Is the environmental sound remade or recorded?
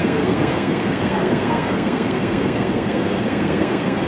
remade